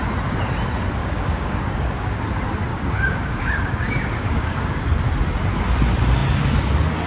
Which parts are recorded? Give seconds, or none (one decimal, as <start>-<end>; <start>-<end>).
0.0-1.0; 2.1-2.7; 4.8-7.1